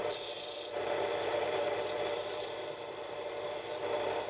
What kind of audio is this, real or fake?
real